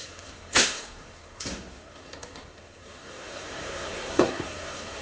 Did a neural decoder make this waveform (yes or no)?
yes